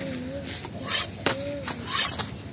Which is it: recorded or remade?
recorded